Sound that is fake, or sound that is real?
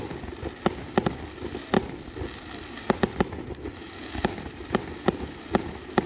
real